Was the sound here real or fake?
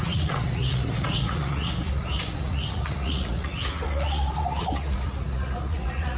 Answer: fake